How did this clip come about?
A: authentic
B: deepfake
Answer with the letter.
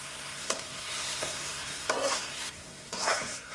B